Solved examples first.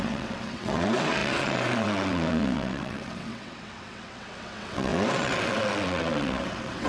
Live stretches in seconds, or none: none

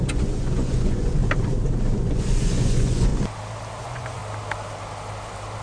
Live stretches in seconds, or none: 1.2-2.0; 3.1-3.8; 4.2-5.6

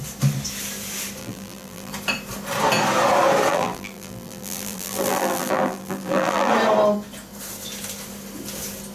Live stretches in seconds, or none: 0.0-1.2; 1.9-3.5; 6.5-8.9